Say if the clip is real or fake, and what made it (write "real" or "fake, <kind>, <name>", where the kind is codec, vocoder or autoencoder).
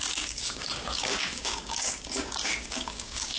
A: fake, codec, DAC